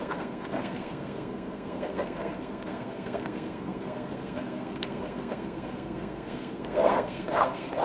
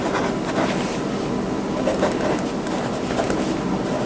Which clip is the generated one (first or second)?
first